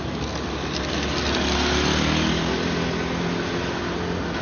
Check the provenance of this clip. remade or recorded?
recorded